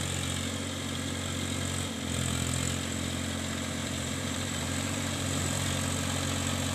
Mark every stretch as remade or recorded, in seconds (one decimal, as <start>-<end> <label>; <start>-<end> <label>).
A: 0.0-3.8 recorded; 3.8-5.7 remade; 5.7-6.7 recorded